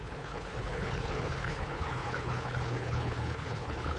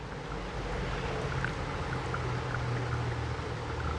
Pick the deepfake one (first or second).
first